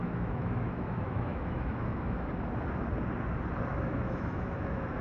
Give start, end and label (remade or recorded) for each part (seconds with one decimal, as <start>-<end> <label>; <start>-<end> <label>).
0.0-2.3 remade; 2.3-3.7 recorded; 3.7-5.0 remade